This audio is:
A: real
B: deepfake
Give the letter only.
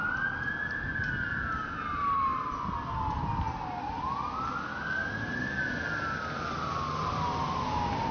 A